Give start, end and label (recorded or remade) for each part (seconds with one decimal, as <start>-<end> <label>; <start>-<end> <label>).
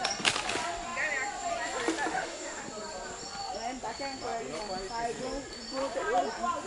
0.0-2.1 recorded; 2.1-2.6 remade; 2.6-6.7 recorded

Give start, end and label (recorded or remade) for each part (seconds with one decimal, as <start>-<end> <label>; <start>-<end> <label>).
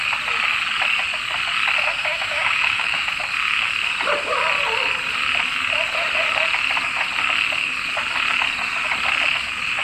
0.0-2.0 recorded; 2.0-3.2 remade; 3.2-9.8 recorded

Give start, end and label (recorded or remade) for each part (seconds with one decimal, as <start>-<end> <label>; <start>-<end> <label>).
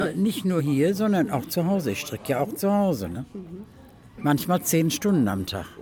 0.0-0.6 remade; 0.6-5.8 recorded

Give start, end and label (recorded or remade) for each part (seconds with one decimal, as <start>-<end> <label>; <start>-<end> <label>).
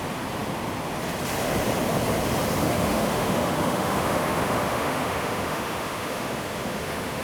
0.0-2.6 recorded; 2.6-7.2 remade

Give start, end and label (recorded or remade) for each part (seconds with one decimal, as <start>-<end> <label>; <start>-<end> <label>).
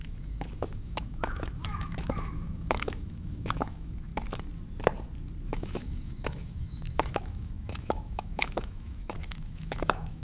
0.0-4.1 remade; 4.1-5.5 recorded; 5.5-10.2 remade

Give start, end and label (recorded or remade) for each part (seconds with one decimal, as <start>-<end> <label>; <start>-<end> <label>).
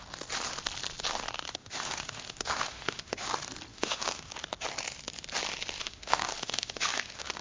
0.0-1.6 recorded; 1.6-3.3 remade; 3.3-3.7 recorded; 3.7-4.3 remade; 4.3-5.8 recorded; 5.8-7.4 remade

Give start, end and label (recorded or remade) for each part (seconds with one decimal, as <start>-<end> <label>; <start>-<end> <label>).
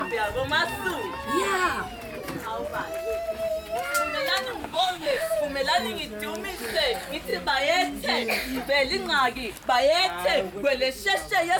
0.0-4.6 recorded; 4.6-5.4 remade; 5.4-11.6 recorded